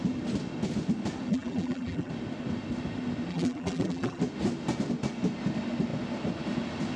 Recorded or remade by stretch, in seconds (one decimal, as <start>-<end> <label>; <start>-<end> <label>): 0.0-1.3 recorded; 1.3-2.1 remade; 2.1-3.3 recorded; 3.3-4.2 remade; 4.2-7.0 recorded